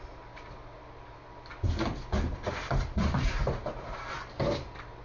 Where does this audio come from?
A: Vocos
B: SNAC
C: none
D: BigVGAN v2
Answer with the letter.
C